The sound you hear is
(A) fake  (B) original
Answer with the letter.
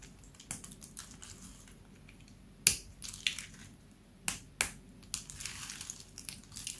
B